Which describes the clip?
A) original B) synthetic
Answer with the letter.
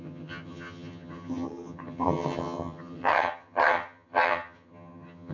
B